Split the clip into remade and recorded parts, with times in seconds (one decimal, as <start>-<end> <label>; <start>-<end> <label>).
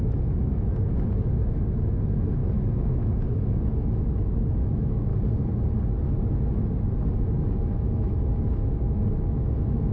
0.0-5.1 remade; 5.1-7.5 recorded; 7.5-9.9 remade